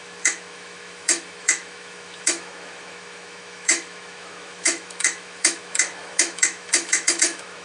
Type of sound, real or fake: fake